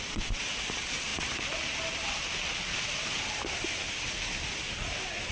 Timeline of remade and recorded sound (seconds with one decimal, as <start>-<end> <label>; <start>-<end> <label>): 0.0-5.3 recorded

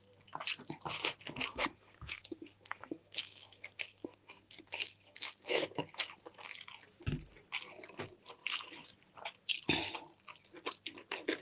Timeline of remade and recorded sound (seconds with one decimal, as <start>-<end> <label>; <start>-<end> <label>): 0.0-1.5 recorded; 1.5-6.1 remade; 6.1-11.4 recorded